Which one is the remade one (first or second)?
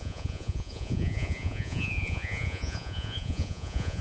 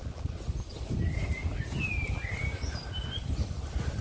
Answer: first